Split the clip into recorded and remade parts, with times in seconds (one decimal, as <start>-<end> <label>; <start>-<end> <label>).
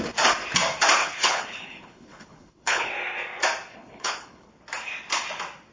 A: 0.0-1.0 recorded; 1.0-2.9 remade; 2.9-3.7 recorded; 3.7-4.5 remade; 4.5-5.7 recorded